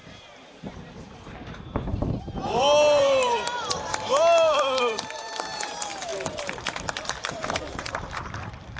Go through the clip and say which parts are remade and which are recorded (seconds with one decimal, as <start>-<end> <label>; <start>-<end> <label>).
0.0-8.8 remade